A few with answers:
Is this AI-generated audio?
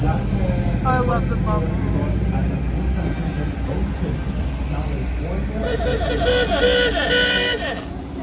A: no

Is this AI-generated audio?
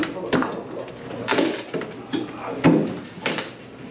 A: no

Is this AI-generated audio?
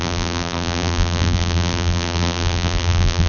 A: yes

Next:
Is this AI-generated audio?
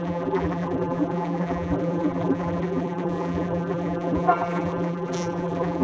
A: yes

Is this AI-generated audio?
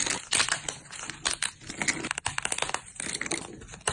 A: yes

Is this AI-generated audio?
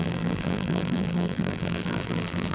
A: yes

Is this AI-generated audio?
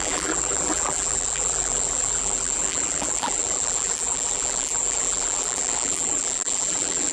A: yes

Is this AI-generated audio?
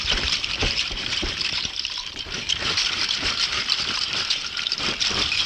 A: yes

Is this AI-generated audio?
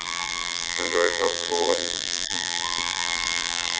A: yes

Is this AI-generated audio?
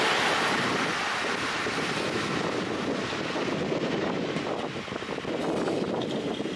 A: no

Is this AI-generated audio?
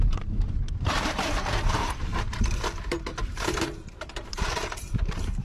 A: yes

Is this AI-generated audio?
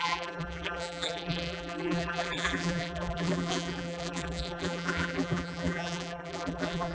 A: yes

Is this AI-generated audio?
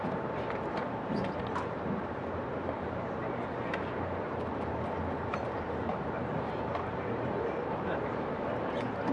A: yes